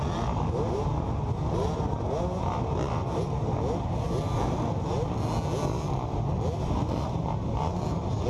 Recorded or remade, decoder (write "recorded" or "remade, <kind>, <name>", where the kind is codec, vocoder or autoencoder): recorded